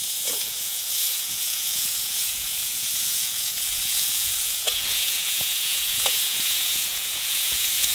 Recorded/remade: remade